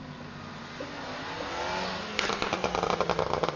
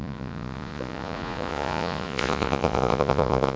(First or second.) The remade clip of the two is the second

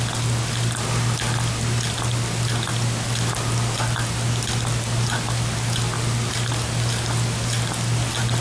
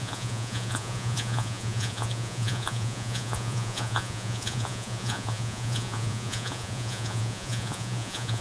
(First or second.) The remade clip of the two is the second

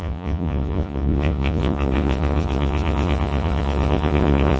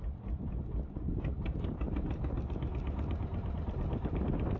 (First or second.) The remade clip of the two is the first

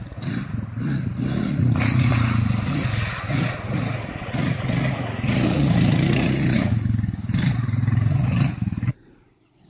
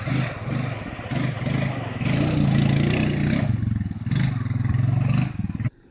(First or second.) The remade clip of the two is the first